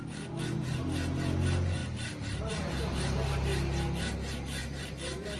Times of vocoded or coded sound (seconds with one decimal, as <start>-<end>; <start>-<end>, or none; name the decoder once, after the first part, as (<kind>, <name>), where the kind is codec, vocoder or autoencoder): 4.6-5.4 (vocoder, BigVGAN v2)